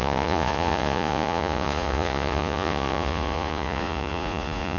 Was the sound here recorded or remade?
remade